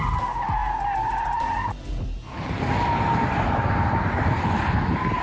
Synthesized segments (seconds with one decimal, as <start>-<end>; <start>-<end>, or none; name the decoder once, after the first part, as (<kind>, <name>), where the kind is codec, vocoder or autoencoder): none